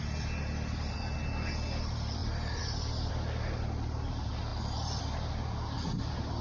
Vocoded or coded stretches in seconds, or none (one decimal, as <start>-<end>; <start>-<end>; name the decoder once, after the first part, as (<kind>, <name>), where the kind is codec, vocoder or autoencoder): none